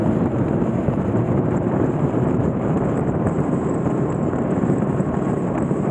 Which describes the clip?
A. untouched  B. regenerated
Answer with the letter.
B